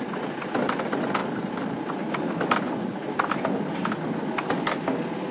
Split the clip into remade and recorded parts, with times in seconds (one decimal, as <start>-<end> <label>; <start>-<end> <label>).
0.0-5.3 recorded